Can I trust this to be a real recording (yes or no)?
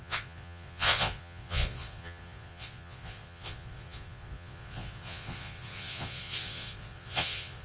no